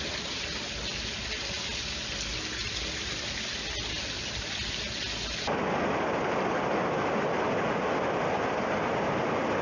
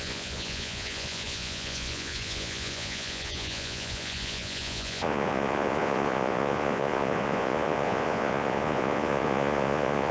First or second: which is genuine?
first